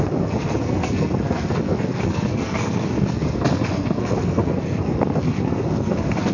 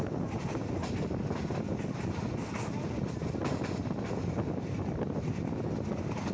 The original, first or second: second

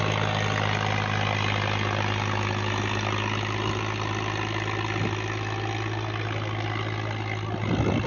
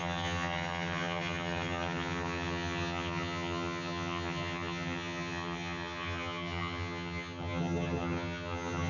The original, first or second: first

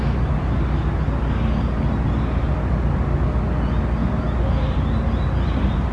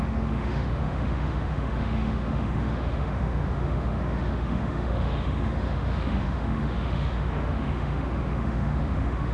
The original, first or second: first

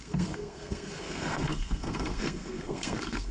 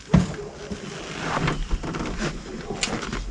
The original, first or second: second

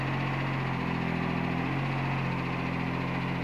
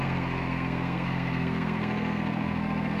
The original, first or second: first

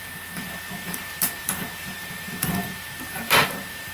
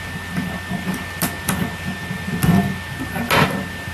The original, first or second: second